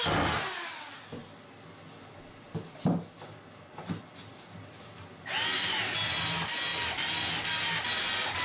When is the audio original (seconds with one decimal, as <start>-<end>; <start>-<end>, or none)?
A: 0.0-8.4